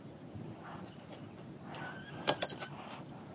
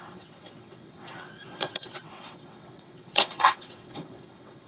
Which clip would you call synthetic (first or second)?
second